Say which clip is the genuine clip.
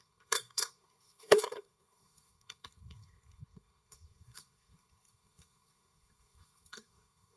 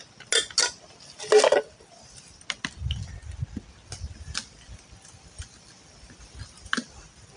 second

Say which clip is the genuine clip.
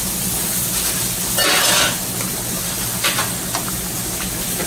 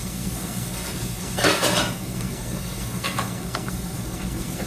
first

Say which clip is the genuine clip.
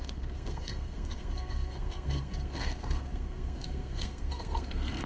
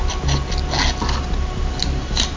second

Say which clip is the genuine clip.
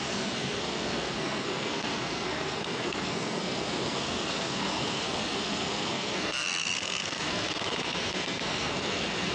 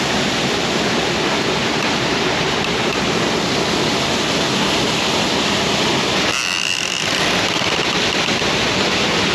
second